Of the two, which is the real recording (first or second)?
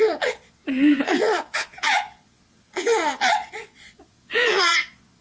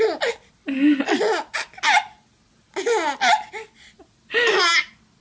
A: second